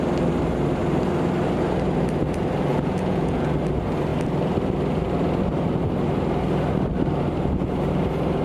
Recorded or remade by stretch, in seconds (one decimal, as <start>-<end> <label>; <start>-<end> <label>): 0.0-2.7 recorded; 2.7-3.5 remade; 3.5-8.4 recorded